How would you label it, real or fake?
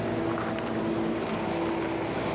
real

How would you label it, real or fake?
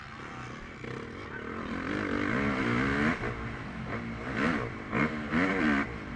real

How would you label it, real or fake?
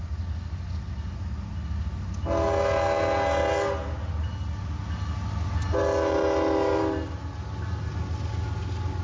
real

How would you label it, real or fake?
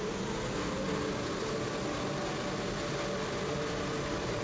real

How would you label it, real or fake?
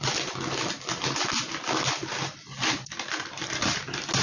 real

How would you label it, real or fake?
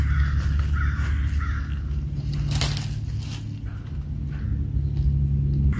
real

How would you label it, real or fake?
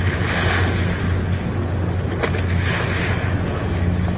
real